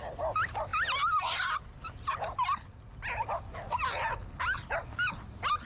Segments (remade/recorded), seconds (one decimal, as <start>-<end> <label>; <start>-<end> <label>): 0.0-5.7 recorded